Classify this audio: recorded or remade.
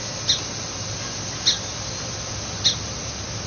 recorded